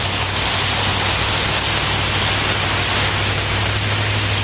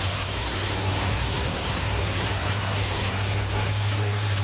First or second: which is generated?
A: second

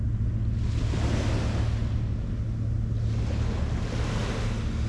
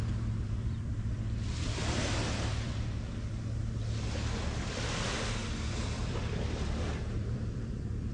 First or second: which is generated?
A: second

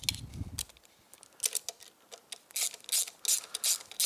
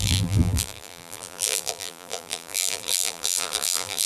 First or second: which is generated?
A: second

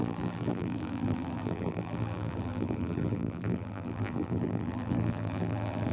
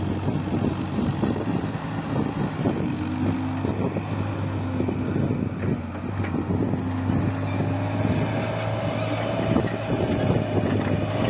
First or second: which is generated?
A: first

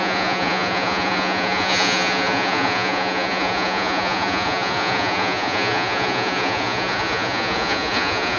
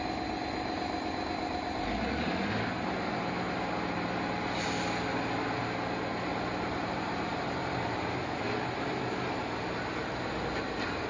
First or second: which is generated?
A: first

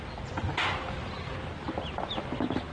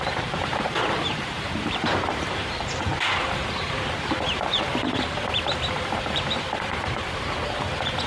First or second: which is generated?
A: second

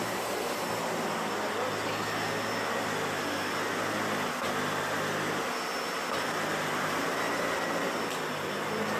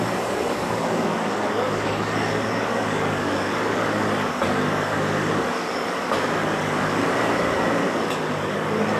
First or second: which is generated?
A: second